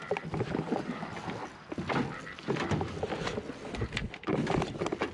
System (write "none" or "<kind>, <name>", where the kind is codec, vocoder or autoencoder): none